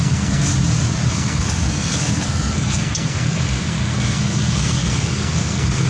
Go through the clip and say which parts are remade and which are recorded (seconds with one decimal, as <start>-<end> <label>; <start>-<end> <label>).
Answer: 0.0-0.5 remade; 0.5-1.1 recorded; 1.1-5.9 remade